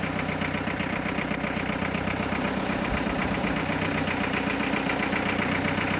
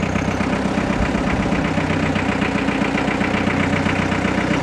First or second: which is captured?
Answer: second